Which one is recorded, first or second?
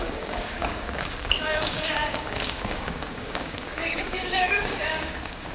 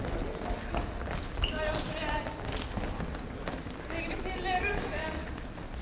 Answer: second